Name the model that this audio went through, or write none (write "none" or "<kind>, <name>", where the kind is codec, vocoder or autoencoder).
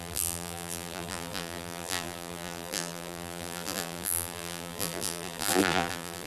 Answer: vocoder, BigVGAN v2